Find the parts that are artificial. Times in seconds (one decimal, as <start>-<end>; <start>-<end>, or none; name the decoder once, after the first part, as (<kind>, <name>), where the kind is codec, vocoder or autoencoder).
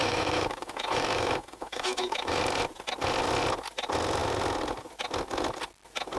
0.0-2.4 (autoencoder, DAC-VAE)